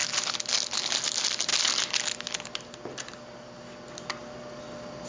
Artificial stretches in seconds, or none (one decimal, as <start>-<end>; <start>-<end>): none